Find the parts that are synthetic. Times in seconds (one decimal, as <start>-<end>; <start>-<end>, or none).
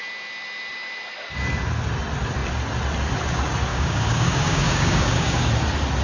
3.7-5.5